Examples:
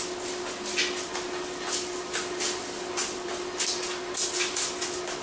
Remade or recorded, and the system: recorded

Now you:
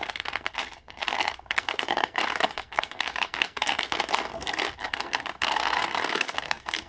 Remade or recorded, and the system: remade, codec, SNAC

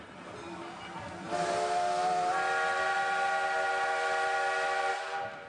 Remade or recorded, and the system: recorded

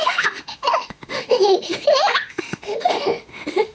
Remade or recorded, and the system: remade, autoencoder, DAC-VAE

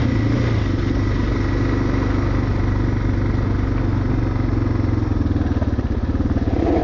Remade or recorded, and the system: recorded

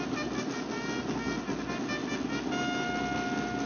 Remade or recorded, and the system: recorded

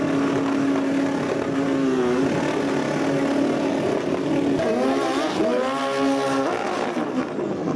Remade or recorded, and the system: recorded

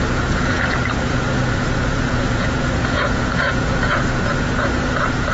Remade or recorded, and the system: remade, vocoder, Vocos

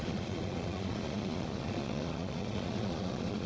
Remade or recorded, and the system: remade, vocoder, Vocos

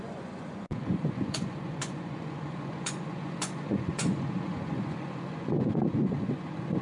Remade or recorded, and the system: remade, vocoder, Vocos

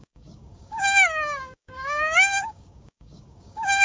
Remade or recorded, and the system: remade, codec, DAC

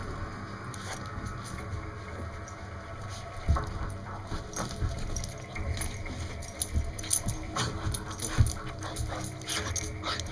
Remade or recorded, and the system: recorded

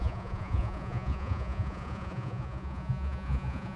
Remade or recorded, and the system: remade, vocoder, Vocos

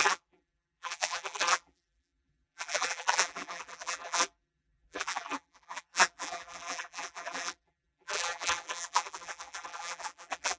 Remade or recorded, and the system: remade, vocoder, BigVGAN v2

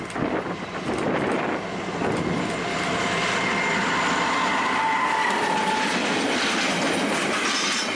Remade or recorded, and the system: recorded